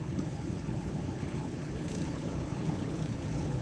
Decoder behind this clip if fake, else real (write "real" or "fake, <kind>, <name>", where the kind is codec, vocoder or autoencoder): fake, codec, HILCodec